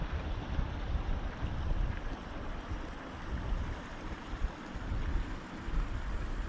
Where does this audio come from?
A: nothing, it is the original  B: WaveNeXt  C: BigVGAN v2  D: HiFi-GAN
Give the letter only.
C